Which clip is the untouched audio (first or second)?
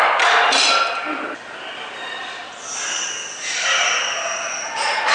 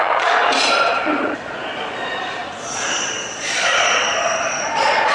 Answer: first